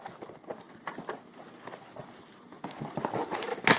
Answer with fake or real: real